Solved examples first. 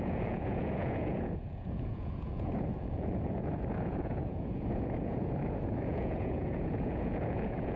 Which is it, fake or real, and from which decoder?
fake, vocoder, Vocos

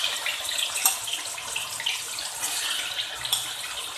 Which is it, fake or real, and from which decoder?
real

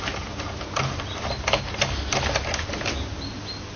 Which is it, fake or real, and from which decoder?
real